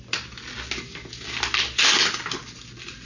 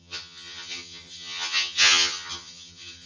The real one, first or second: first